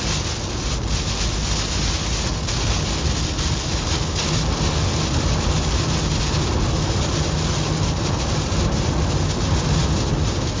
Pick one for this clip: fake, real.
real